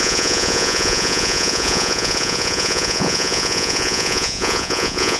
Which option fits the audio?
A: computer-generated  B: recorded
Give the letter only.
A